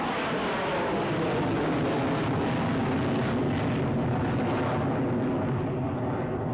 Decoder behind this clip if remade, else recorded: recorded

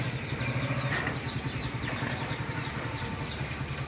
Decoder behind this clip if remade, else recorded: recorded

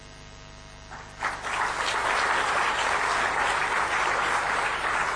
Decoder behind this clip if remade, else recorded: recorded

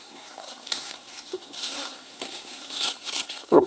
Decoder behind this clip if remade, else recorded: remade, codec, SNAC